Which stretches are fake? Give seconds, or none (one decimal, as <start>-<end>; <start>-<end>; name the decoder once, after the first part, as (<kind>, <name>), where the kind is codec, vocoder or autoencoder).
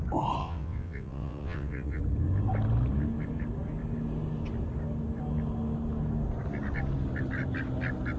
0.4-2.0 (vocoder, WaveNeXt)